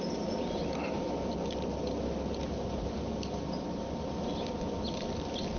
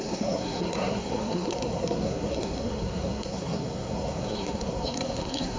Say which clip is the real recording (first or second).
first